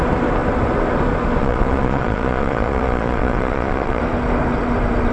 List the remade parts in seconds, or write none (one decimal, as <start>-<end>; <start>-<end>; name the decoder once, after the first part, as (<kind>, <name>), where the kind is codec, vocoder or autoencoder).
1.4-4.0 (vocoder, Vocos)